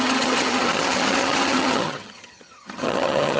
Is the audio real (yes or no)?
no